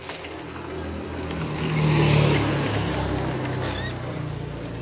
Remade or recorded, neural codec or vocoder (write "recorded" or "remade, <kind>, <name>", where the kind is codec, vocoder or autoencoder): recorded